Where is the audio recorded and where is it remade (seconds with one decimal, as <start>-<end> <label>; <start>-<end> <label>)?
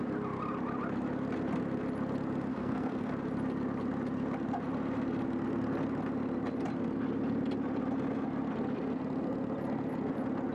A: 0.0-2.5 recorded; 2.5-3.1 remade; 3.1-10.5 recorded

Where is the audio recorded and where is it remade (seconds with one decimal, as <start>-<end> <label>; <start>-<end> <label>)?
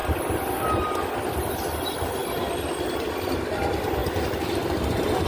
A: 0.0-5.3 recorded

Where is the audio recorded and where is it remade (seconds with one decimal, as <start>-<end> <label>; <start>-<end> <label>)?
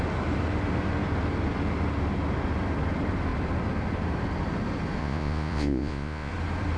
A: 0.0-5.0 recorded; 5.0-6.3 remade; 6.3-6.8 recorded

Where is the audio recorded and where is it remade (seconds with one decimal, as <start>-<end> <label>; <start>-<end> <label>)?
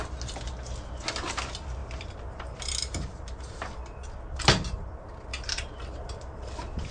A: 0.0-1.8 recorded; 1.8-3.8 remade; 3.8-5.3 recorded; 5.3-6.3 remade; 6.3-6.9 recorded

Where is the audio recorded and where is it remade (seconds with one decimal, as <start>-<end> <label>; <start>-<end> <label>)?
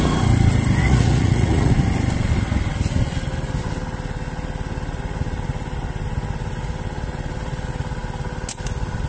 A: 0.0-0.8 recorded; 0.8-1.7 remade; 1.7-9.1 recorded